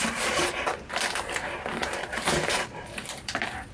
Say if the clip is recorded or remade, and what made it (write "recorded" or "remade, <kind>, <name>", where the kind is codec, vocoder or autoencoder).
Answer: remade, vocoder, BigVGAN v2